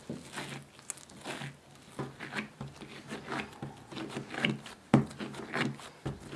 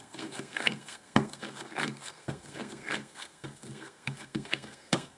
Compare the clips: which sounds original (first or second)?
first